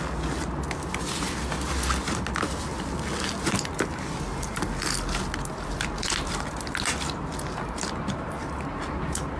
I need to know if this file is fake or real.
real